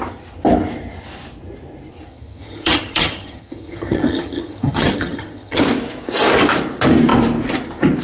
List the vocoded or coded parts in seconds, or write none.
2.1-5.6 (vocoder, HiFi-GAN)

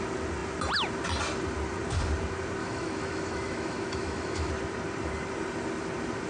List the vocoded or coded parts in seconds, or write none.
2.6-4.5 (autoencoder, DAC-VAE)

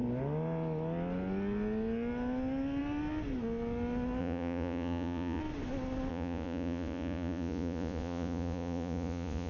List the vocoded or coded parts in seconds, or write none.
4.2-5.4 (vocoder, Vocos); 6.1-9.5

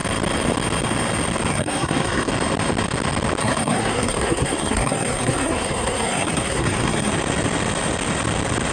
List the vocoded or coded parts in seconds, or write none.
1.5-2.3 (codec, SNAC); 3.4-7.1

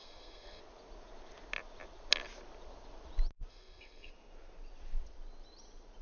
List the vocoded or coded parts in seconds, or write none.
0.0-0.6 (codec, SNAC); 3.5-4.1